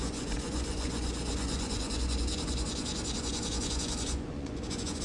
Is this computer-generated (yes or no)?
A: yes